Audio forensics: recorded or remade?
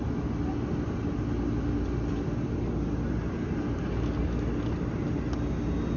recorded